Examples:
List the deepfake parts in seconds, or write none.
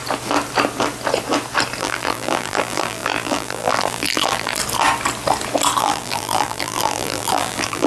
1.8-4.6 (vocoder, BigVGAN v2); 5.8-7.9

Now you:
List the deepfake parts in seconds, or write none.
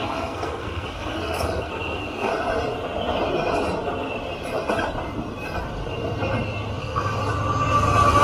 0.0-2.3 (codec, SNAC); 6.8-7.2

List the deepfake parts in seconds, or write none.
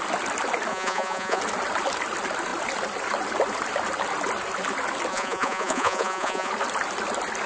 0.7-1.4 (vocoder, Vocos); 5.1-6.5